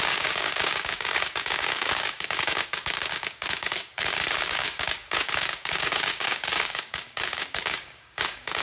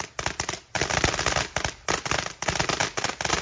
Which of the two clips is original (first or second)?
second